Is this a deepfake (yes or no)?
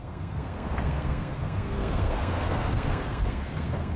yes